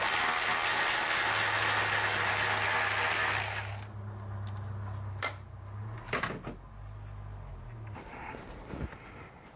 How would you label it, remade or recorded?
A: recorded